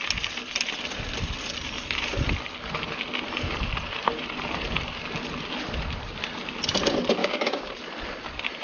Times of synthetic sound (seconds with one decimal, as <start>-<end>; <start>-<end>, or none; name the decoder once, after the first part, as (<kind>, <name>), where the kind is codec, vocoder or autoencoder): 7.2-7.7 (codec, DAC)